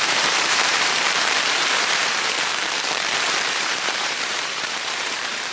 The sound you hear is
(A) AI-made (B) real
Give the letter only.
A